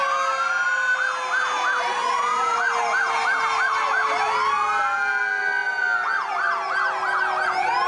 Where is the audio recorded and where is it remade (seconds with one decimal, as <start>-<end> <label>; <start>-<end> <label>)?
0.0-7.9 recorded